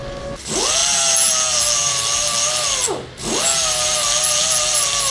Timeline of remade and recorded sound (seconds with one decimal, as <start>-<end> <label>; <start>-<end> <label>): 0.0-5.1 recorded